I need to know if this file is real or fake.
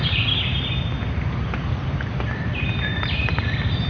real